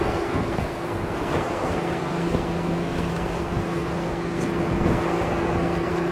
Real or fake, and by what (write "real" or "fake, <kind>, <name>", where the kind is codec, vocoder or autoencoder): fake, codec, SNAC